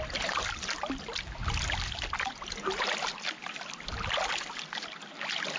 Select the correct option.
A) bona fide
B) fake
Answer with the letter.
A